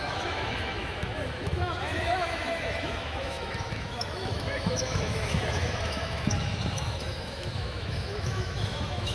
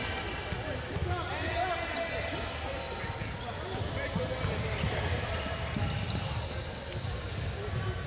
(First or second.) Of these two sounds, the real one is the second